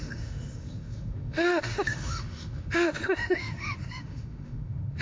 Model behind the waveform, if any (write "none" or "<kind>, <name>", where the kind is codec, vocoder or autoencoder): autoencoder, DAC-VAE